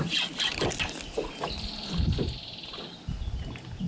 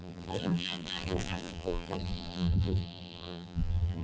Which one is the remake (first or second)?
second